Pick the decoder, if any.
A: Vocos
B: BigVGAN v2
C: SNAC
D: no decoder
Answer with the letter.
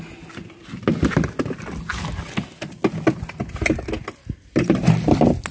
D